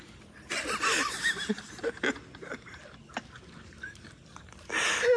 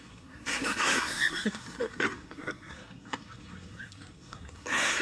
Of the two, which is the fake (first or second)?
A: second